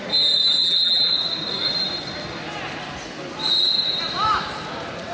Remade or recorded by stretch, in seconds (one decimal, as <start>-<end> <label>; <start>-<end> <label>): 0.0-0.6 recorded; 0.6-1.1 remade; 1.1-5.1 recorded